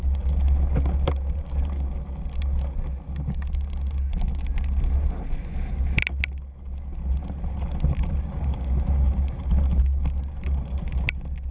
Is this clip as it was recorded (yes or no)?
yes